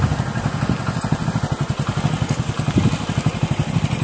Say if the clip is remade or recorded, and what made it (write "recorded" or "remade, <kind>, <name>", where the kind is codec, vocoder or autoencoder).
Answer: recorded